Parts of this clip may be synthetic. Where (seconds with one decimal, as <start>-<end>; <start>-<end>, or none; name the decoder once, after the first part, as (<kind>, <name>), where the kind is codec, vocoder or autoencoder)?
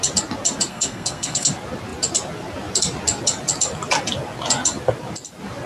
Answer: 0.7-1.5 (codec, SNAC)